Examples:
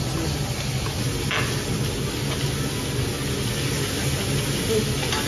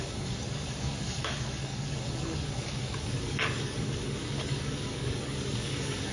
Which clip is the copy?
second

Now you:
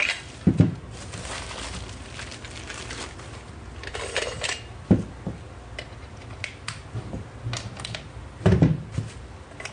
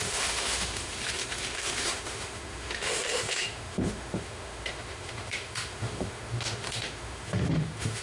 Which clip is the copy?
second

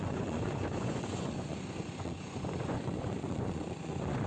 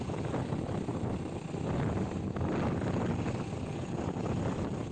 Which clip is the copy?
first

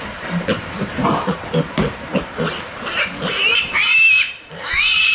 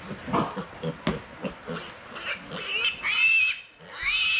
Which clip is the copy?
first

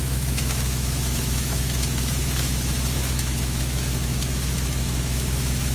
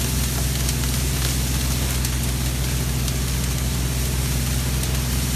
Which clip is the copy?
first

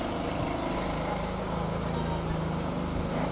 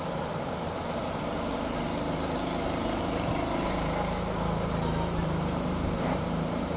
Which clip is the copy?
second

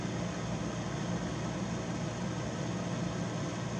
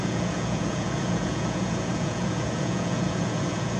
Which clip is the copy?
second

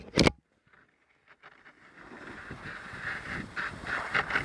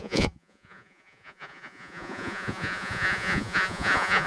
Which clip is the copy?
second